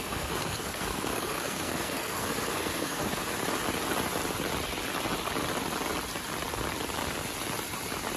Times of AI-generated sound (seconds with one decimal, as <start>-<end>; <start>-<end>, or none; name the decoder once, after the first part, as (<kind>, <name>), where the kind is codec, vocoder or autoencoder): 0.0-3.2 (codec, SNAC)

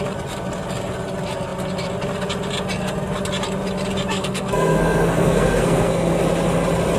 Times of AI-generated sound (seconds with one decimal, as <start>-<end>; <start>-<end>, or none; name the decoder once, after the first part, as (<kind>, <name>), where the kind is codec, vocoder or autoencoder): 4.1-6.2 (codec, SNAC)

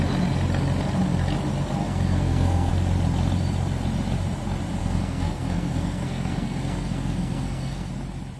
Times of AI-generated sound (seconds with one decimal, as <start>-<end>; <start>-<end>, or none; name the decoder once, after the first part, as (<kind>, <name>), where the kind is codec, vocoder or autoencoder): 1.8-2.7 (codec, SNAC); 4.8-7.9

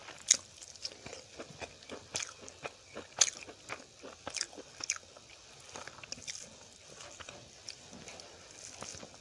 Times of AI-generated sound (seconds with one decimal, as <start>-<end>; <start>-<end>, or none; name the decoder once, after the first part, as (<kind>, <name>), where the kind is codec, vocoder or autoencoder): none

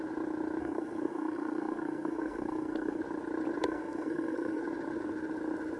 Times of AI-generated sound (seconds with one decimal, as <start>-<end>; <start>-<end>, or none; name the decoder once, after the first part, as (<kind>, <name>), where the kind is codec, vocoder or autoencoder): 0.6-3.0 (codec, SNAC); 3.6-4.6

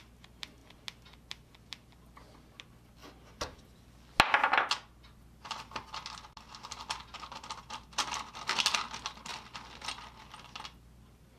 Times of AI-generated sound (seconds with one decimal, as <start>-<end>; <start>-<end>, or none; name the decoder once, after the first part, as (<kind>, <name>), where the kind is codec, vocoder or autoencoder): none

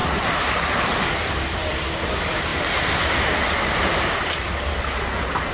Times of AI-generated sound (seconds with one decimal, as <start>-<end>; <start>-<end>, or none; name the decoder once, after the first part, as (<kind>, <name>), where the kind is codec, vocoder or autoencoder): none